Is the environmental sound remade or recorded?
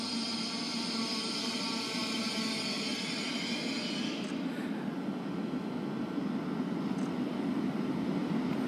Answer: recorded